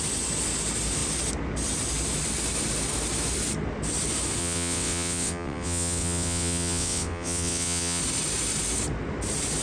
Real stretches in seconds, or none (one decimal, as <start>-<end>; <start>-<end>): 0.0-4.4; 8.0-9.6